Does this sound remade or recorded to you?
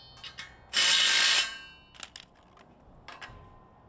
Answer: recorded